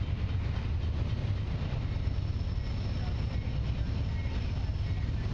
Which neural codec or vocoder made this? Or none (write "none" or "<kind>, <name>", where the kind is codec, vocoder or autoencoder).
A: none